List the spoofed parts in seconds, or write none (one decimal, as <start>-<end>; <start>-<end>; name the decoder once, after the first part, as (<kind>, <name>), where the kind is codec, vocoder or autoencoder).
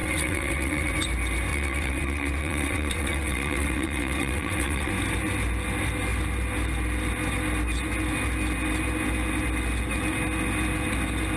0.0-0.9 (vocoder, WaveNeXt); 1.5-4.9